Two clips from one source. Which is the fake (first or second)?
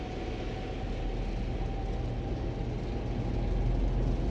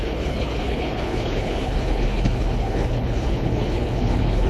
second